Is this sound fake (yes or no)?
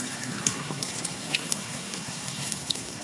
yes